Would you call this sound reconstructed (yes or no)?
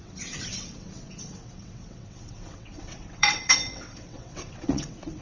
yes